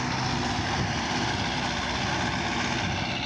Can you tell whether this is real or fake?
real